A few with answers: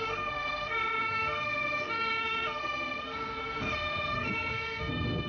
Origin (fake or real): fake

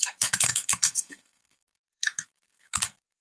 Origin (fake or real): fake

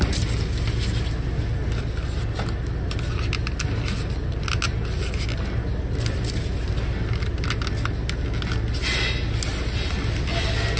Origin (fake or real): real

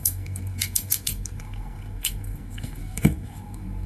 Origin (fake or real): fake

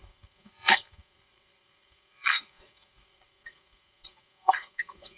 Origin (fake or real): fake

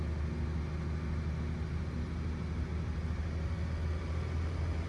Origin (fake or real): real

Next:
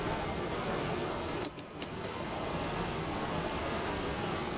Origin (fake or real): fake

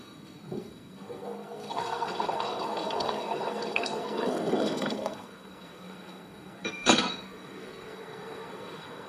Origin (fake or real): fake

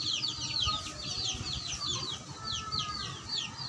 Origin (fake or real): real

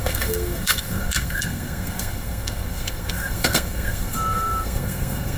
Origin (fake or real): fake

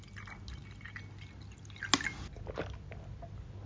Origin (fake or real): real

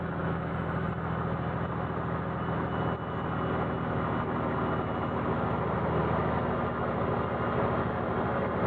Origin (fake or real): real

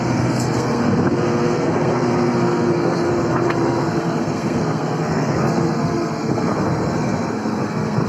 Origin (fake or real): fake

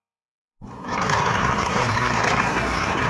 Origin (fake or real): fake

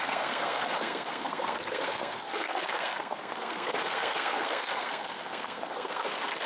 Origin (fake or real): fake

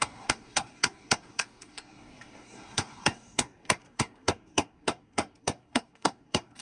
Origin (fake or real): fake